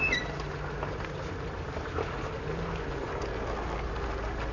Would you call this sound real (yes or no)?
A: yes